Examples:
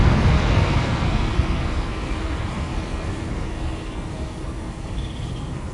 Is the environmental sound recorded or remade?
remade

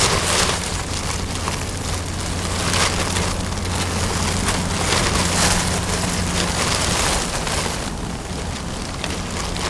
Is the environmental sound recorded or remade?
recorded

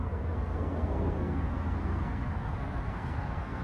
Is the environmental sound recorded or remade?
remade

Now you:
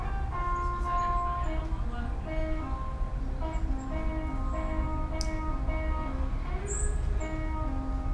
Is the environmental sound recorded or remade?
recorded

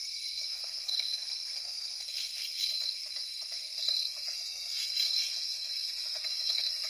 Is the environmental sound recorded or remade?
remade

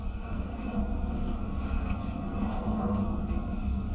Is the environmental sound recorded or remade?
remade